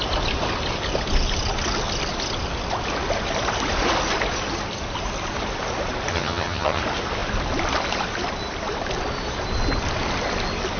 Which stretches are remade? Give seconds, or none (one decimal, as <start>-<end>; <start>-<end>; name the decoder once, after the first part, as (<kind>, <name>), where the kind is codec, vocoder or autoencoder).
6.1-6.8 (vocoder, HiFi-GAN)